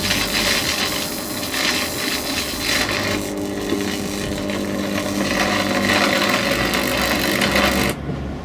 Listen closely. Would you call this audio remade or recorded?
recorded